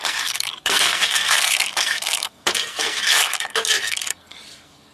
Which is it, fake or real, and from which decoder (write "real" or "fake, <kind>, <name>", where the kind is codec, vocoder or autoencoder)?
fake, codec, SNAC